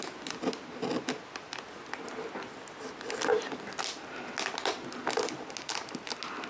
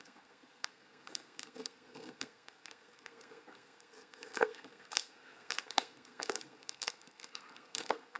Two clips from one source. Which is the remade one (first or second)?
second